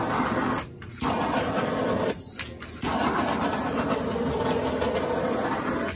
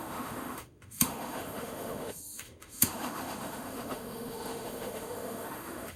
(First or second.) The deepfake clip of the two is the second